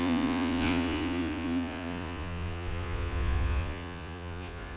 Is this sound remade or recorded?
remade